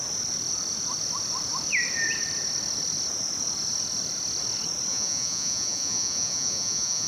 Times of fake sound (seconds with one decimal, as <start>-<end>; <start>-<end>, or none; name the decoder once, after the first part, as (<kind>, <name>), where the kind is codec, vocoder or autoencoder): 4.9-7.1 (vocoder, Vocos)